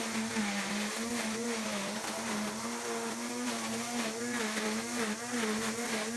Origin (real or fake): real